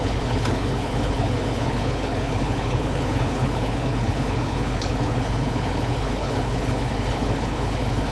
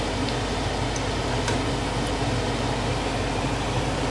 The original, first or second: second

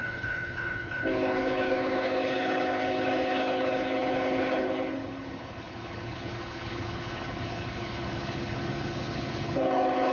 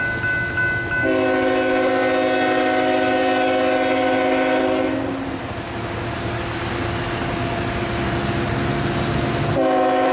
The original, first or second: second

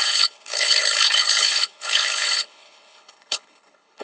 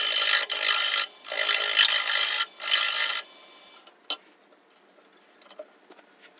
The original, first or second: second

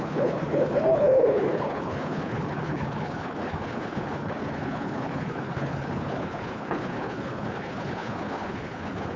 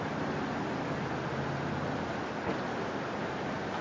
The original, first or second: second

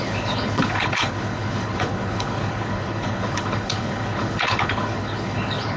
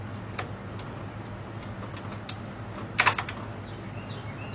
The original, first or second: second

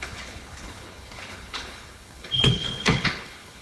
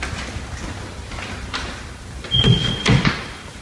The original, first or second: second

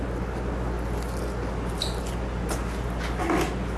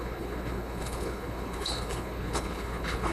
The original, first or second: first